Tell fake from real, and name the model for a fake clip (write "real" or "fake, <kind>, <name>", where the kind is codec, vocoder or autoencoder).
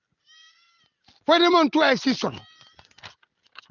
real